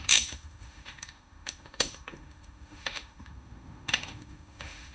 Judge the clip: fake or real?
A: fake